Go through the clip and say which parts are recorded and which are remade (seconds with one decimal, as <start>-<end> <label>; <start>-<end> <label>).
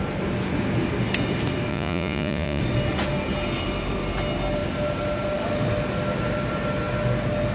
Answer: 0.0-1.7 recorded; 1.7-2.6 remade; 2.6-7.5 recorded